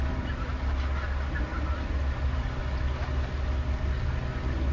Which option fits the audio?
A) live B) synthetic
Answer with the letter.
A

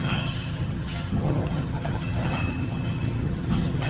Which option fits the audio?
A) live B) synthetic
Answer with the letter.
B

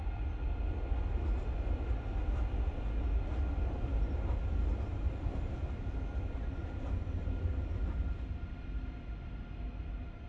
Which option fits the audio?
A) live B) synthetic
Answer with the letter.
A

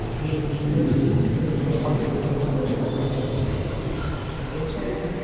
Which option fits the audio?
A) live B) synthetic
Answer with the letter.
A